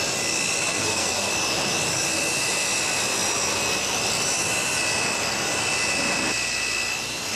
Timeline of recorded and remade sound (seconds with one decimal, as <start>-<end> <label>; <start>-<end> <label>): 0.0-0.7 recorded; 0.7-1.3 remade; 1.3-7.4 recorded